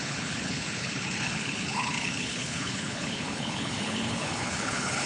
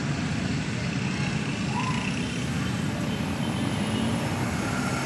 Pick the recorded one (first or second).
second